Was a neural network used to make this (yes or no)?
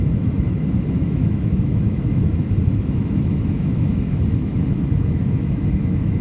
yes